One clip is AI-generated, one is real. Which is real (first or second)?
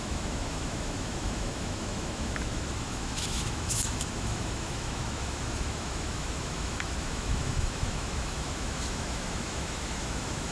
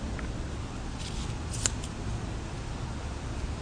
second